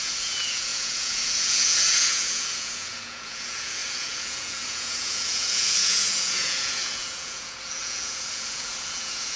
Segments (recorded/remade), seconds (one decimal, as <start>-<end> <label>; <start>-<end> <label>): 0.0-9.4 remade